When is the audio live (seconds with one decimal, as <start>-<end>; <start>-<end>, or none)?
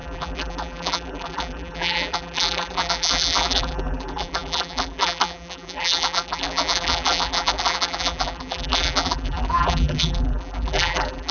none